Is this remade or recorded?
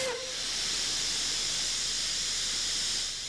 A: remade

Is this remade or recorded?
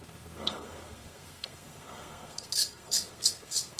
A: remade